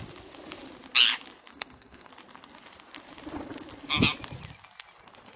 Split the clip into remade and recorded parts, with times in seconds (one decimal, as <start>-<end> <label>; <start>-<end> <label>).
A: 0.0-1.5 recorded; 1.5-2.1 remade; 2.1-5.4 recorded